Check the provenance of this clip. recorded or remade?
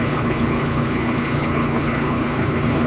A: remade